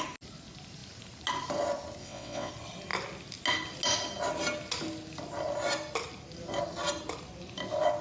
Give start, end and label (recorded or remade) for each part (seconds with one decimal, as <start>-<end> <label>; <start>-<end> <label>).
0.0-2.0 recorded; 2.0-2.5 remade; 2.5-8.0 recorded